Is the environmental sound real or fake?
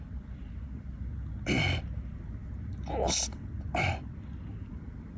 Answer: real